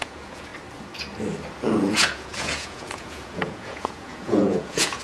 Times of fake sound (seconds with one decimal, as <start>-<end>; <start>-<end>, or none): 0.0-0.5; 1.9-5.0